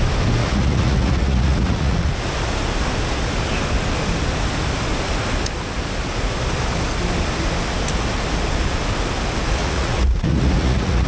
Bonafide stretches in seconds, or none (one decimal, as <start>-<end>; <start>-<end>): 0.0-0.4; 2.1-9.6